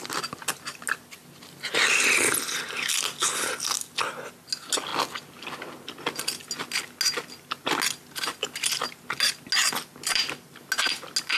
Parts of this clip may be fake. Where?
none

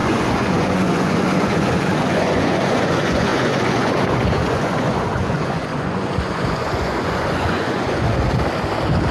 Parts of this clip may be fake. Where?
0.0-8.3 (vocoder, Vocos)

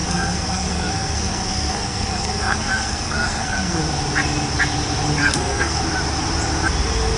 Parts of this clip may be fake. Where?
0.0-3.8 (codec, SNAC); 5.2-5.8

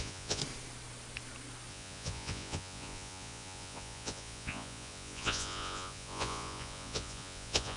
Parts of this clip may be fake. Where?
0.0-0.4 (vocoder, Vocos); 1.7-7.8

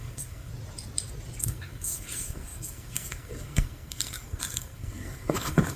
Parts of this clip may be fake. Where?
0.0-0.5 (codec, SNAC); 1.4-5.8

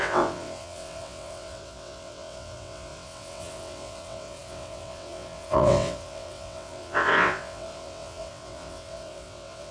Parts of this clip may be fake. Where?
0.0-9.7 (vocoder, WaveNeXt)

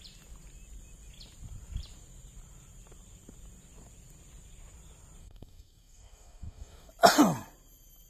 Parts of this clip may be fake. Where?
5.2-6.9 (codec, DAC)